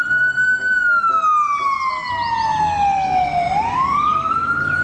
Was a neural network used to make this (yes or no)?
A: no